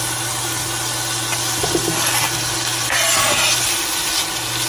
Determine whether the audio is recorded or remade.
recorded